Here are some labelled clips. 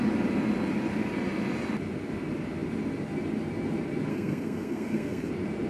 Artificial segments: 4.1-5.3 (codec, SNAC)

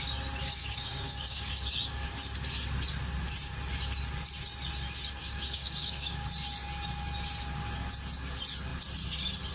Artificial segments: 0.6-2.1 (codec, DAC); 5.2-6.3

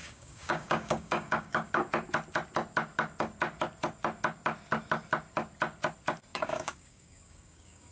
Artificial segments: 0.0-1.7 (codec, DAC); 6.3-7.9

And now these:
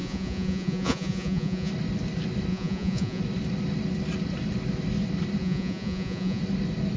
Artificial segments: 0.0-1.7 (vocoder, Vocos); 2.5-3.2; 5.4-6.4